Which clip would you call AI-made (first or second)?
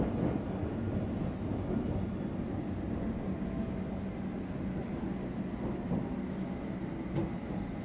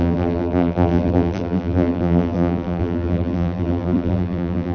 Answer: second